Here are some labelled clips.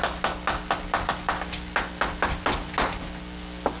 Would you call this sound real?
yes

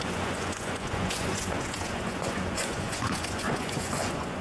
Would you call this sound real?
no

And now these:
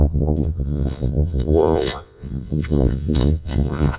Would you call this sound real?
no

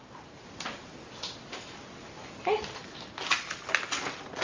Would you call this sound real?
yes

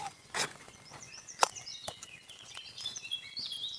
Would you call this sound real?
no